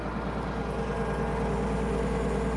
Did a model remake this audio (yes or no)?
no